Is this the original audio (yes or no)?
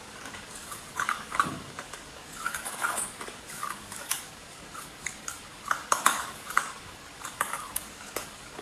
no